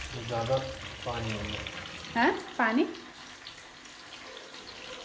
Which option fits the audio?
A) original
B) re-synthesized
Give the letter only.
A